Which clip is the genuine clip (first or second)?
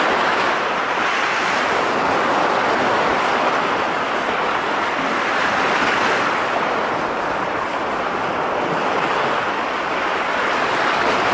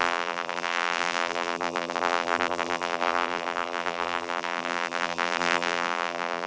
first